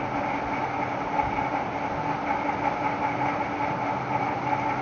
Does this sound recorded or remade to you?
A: recorded